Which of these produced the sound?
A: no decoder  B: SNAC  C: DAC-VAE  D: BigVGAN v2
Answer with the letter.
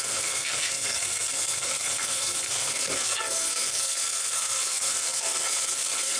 B